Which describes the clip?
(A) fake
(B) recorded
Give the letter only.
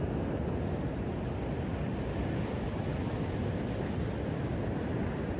B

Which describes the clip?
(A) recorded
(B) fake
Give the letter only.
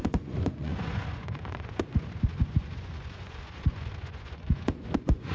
B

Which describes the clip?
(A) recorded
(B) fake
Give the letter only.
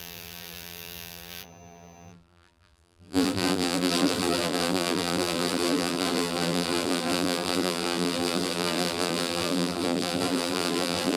B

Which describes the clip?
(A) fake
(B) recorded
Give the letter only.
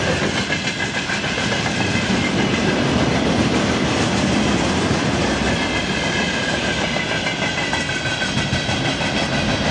A